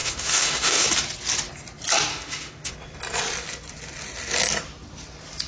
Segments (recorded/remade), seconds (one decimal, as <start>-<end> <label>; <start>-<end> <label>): 0.0-0.9 remade; 0.9-2.1 recorded; 2.1-2.7 remade; 2.7-5.5 recorded